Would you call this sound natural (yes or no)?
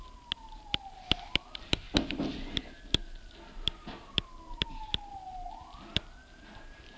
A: yes